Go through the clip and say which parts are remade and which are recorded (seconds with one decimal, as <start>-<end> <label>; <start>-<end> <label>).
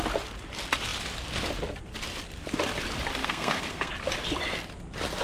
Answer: 0.0-3.2 recorded; 3.2-3.9 remade; 3.9-5.2 recorded